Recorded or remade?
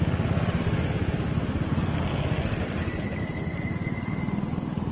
recorded